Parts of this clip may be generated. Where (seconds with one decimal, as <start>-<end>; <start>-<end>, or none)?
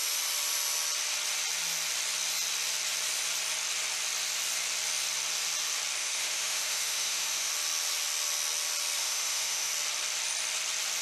6.0-7.5; 9.0-9.7